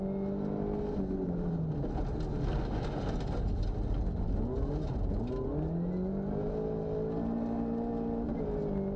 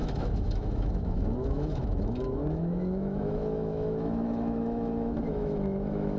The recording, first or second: first